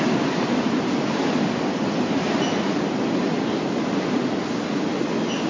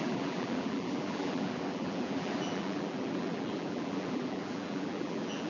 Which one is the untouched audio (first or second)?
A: first